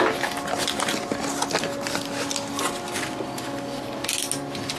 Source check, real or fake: real